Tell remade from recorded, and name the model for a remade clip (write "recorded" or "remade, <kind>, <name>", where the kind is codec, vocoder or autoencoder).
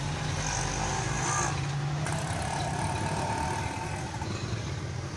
recorded